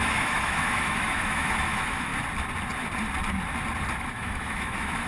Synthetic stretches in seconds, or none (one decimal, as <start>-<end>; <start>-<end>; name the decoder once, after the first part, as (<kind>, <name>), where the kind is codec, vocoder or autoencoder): 0.0-2.1 (autoencoder, DAC-VAE); 4.0-5.1